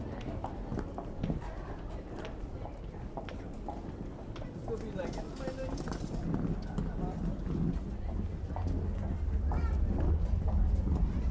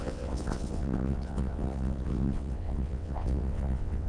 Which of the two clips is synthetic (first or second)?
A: second